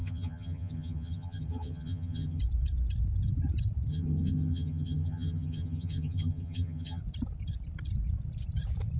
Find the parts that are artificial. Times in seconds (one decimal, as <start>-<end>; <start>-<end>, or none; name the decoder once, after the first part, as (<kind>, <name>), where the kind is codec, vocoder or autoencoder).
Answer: 0.0-2.4 (vocoder, HiFi-GAN); 3.9-7.0